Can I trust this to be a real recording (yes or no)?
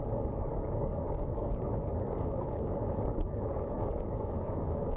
no